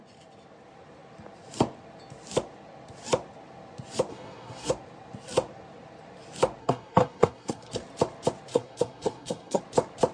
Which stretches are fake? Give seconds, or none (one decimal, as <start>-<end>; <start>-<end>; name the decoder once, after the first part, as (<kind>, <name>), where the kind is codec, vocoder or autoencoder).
4.1-4.7 (codec, SNAC); 6.6-7.7; 8.5-9.6